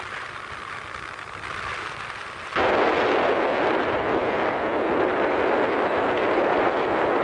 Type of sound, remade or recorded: recorded